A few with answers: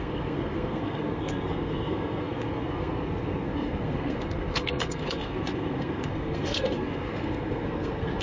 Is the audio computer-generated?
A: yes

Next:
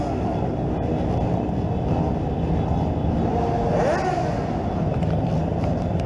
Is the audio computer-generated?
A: no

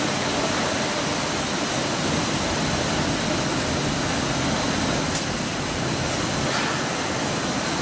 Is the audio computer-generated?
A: no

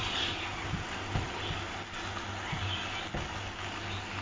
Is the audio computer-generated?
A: no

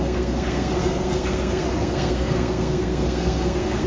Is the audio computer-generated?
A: yes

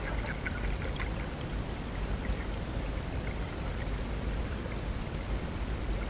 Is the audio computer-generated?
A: no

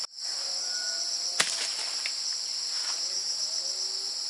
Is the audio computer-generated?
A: no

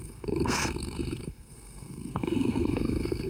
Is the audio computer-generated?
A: yes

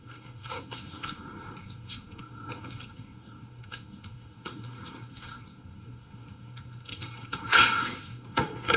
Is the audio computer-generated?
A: yes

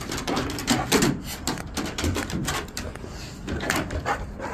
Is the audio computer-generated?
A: no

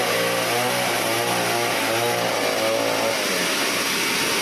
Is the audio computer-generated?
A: no